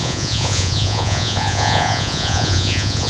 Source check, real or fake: fake